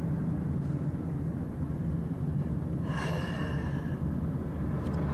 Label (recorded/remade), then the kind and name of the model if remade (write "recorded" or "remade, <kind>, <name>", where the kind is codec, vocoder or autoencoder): recorded